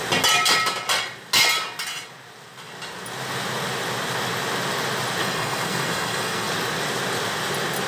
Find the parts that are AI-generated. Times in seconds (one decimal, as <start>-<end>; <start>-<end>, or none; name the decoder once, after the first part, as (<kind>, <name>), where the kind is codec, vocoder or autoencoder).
5.2-6.5 (codec, SNAC)